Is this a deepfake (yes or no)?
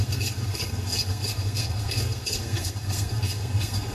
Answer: yes